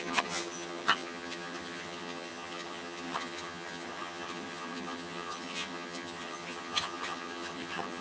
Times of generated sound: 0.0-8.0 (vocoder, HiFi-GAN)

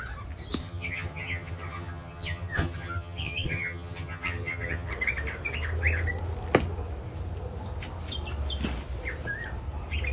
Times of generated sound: 0.6-4.9 (vocoder, HiFi-GAN)

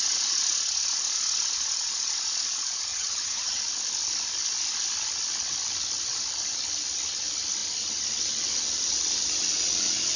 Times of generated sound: 2.9-3.6 (vocoder, HiFi-GAN)

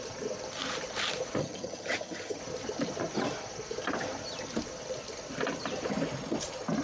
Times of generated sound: 1.4-2.4 (vocoder, HiFi-GAN)

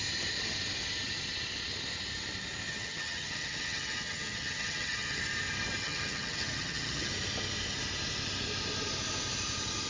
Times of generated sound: 2.7-5.2 (vocoder, HiFi-GAN); 5.8-7.1